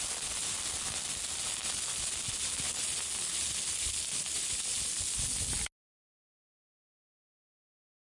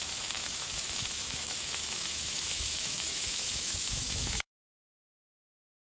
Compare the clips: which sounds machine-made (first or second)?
second